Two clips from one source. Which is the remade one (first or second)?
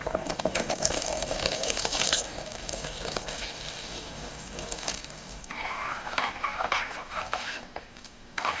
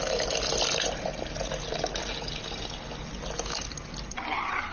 first